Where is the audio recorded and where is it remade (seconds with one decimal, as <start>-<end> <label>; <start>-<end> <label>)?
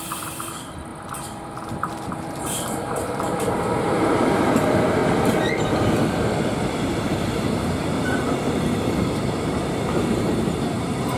0.0-0.9 remade; 0.9-2.4 recorded; 2.4-5.0 remade; 5.0-6.5 recorded; 6.5-11.2 remade